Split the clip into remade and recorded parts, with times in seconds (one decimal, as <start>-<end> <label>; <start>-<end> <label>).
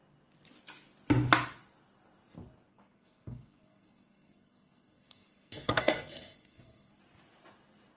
0.0-2.7 recorded; 2.7-7.0 remade; 7.0-8.0 recorded